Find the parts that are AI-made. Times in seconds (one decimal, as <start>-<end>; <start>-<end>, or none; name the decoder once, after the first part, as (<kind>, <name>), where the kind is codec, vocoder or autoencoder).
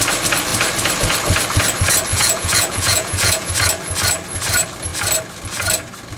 2.1-3.5 (vocoder, Vocos)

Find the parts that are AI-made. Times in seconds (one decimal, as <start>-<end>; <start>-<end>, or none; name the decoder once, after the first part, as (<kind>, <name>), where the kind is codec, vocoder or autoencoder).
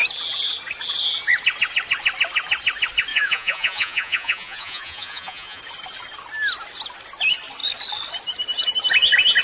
3.1-5.6 (vocoder, Vocos)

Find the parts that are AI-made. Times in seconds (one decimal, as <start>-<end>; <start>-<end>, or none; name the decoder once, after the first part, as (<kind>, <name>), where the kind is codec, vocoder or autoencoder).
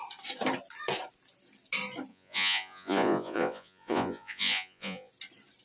2.1-5.1 (vocoder, Vocos)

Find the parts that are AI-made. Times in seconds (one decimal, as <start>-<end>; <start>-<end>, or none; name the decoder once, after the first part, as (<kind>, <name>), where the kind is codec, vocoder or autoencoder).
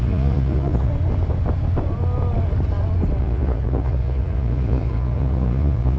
0.0-0.9 (vocoder, Vocos); 3.2-6.0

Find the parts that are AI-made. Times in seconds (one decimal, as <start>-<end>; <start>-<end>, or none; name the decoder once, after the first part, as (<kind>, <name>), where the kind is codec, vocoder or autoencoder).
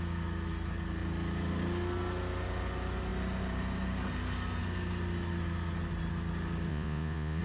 6.7-7.4 (vocoder, Vocos)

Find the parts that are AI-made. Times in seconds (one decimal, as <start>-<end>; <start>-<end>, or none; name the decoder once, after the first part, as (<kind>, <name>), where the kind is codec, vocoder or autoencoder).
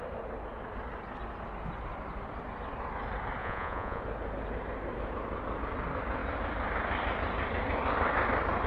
3.4-4.0 (vocoder, Vocos)